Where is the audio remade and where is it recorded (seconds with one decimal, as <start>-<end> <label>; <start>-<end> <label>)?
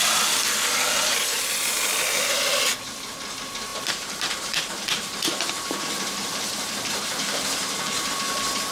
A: 0.0-3.7 recorded; 3.7-8.1 remade; 8.1-8.7 recorded